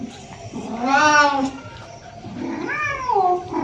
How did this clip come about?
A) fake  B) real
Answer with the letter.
A